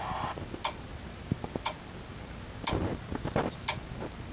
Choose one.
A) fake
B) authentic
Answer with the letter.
B